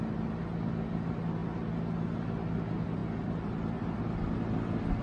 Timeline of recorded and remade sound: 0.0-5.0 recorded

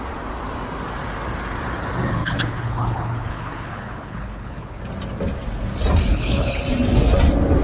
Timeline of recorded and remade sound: 0.0-2.2 recorded; 2.2-4.8 remade; 4.8-6.1 recorded; 6.1-6.6 remade; 6.6-7.6 recorded

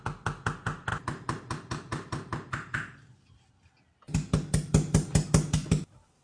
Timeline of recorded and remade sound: 0.0-6.2 recorded

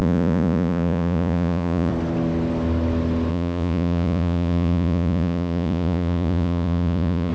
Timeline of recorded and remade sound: 0.0-1.9 remade; 1.9-3.3 recorded; 3.3-7.3 remade

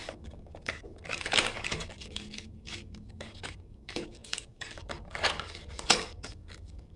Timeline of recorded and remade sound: 0.0-7.0 remade

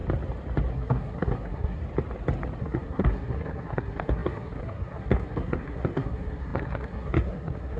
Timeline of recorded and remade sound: 0.0-0.7 recorded; 0.7-1.8 remade; 1.8-2.6 recorded; 2.6-7.8 remade

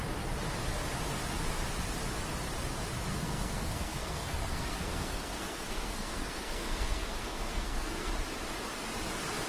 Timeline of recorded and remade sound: 0.0-3.1 recorded; 3.1-8.1 remade; 8.1-9.5 recorded

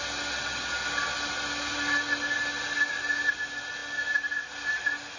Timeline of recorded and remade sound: 0.0-5.2 recorded